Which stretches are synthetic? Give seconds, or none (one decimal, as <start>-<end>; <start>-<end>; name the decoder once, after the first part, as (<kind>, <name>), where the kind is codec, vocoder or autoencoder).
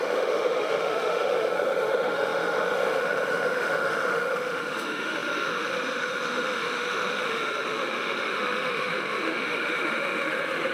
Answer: 0.0-10.7 (autoencoder, DAC-VAE)